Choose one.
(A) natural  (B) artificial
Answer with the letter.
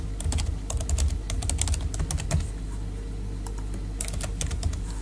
A